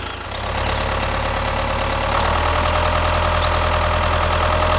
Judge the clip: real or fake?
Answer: real